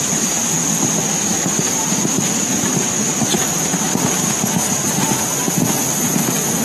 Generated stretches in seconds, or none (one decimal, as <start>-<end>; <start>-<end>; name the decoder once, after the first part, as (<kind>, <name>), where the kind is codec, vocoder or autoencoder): 1.3-5.1 (vocoder, BigVGAN v2)